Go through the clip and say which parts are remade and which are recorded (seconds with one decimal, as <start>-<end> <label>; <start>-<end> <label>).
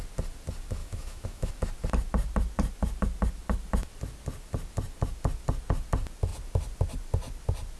0.0-0.8 recorded; 0.8-1.5 remade; 1.5-7.8 recorded